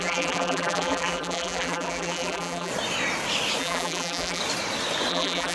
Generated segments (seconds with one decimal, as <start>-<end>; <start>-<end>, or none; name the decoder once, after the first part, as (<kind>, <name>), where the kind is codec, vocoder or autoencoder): 0.0-2.7 (vocoder, BigVGAN v2); 3.6-4.4; 5.1-5.5